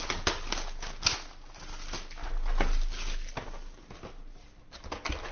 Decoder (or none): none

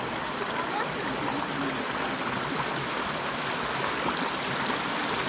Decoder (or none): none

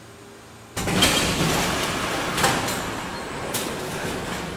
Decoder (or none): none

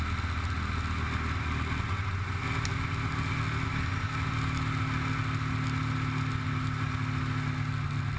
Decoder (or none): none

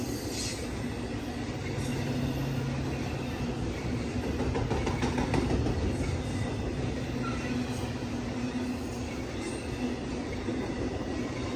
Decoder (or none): none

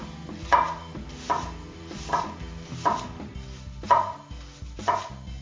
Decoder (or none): none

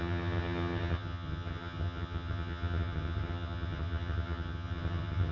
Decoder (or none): vocoder, HiFi-GAN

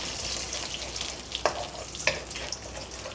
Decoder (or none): none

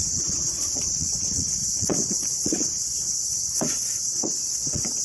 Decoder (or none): vocoder, Vocos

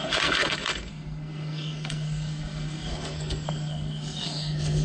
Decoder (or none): codec, SNAC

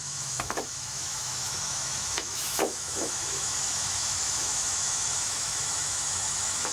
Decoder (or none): autoencoder, DAC-VAE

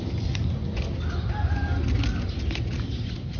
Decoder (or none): none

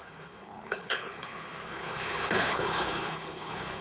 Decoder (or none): codec, HILCodec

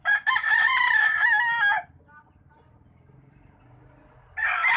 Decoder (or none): none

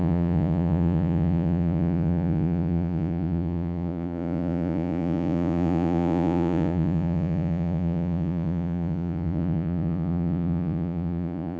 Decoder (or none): vocoder, Vocos